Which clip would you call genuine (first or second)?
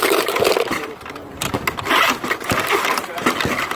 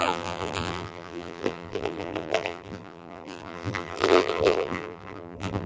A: first